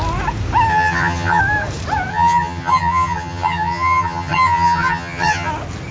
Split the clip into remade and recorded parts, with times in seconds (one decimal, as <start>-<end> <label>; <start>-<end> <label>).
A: 0.0-0.7 recorded; 0.7-1.4 remade; 1.4-2.1 recorded; 2.1-5.5 remade; 5.5-5.9 recorded